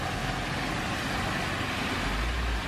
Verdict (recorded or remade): recorded